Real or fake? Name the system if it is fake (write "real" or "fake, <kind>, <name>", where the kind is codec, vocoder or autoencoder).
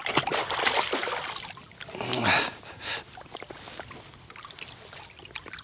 real